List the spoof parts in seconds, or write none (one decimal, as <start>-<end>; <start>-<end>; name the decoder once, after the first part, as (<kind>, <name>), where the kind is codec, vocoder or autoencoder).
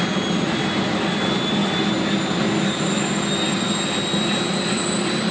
none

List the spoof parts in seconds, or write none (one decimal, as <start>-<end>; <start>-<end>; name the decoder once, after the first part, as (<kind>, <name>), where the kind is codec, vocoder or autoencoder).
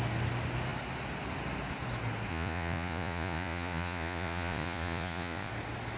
2.3-5.5 (vocoder, Vocos)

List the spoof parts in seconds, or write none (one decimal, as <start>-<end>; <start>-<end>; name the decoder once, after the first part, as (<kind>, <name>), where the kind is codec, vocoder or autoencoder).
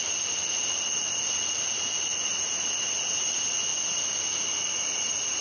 none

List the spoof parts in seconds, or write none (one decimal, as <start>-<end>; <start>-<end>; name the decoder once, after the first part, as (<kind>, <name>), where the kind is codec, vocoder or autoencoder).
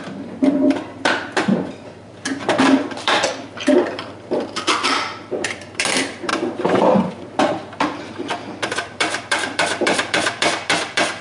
0.0-6.3 (vocoder, BigVGAN v2); 7.1-11.2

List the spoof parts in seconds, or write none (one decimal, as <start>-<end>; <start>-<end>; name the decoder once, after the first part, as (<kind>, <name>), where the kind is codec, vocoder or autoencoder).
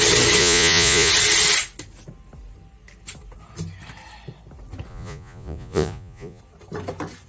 0.4-1.1 (vocoder, Vocos); 4.9-6.4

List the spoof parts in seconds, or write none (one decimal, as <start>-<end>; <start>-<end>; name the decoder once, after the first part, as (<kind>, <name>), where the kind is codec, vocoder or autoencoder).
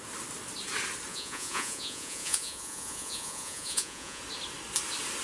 1.1-4.2 (vocoder, Vocos)